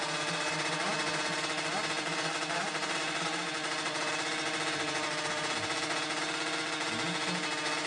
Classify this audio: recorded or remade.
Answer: recorded